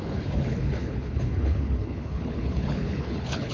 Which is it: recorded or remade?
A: remade